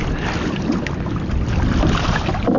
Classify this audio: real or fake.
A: fake